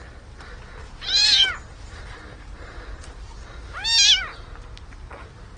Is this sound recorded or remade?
recorded